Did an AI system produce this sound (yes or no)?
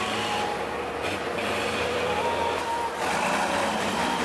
no